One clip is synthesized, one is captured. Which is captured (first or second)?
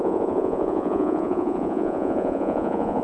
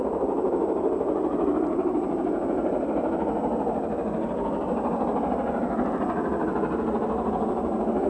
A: second